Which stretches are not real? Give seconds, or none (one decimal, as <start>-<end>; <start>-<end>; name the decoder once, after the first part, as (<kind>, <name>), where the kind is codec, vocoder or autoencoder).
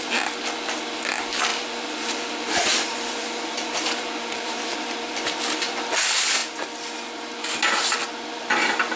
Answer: 1.5-5.2 (vocoder, BigVGAN v2)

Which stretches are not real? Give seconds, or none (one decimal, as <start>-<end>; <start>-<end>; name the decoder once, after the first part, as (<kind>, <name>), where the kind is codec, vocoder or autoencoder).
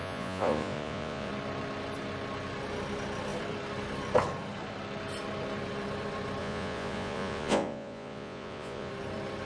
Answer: 0.0-1.3 (vocoder, Vocos); 6.4-8.9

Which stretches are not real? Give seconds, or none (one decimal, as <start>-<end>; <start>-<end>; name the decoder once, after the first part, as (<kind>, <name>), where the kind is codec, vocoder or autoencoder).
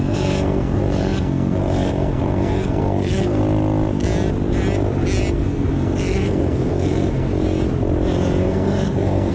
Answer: 0.0-3.4 (codec, SNAC); 5.3-7.3; 8.4-9.3